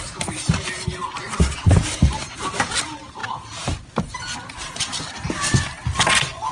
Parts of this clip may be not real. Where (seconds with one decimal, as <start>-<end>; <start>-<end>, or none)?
none